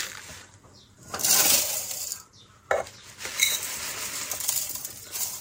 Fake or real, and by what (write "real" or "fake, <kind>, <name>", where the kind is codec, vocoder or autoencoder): fake, vocoder, BigVGAN v2